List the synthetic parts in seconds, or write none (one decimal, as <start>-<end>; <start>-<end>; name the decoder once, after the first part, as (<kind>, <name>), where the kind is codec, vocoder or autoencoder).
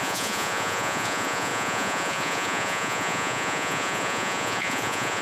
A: 0.0-5.2 (vocoder, Vocos)